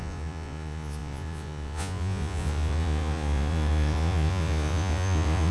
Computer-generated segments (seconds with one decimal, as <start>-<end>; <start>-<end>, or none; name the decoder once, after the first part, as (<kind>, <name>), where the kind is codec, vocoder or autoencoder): 0.0-5.5 (vocoder, Vocos)

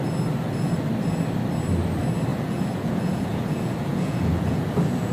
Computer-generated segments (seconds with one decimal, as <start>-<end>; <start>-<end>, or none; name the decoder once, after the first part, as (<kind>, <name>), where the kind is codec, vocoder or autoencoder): 2.3-5.1 (vocoder, Vocos)

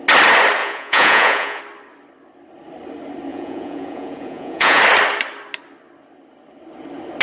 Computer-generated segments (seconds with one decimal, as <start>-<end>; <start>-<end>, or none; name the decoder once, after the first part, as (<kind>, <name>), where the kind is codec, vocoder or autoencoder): 0.6-1.6 (vocoder, Vocos); 3.3-4.8

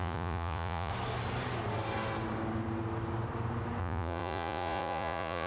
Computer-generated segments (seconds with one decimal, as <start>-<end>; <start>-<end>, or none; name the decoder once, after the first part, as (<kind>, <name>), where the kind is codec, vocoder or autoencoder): 0.0-0.9 (vocoder, Vocos); 3.8-5.5

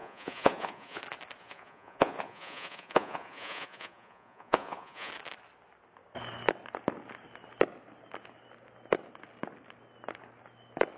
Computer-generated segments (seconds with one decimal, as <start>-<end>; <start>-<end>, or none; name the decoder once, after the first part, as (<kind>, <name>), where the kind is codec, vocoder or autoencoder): 0.0-1.0 (vocoder, Vocos); 1.4-5.1

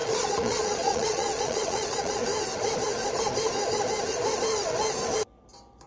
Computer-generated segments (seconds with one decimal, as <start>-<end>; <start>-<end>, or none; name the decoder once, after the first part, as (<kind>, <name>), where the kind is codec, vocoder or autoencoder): 0.0-2.2 (vocoder, Vocos)